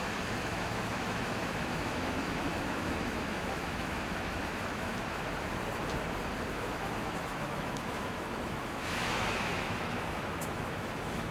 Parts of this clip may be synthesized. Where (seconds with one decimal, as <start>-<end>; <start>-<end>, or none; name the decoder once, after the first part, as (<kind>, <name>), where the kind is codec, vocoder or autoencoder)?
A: 0.0-4.9 (autoencoder, DAC-VAE); 6.5-11.3